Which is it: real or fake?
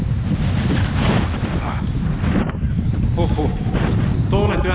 real